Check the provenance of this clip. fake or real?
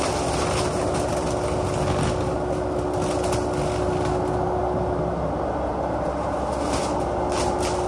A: real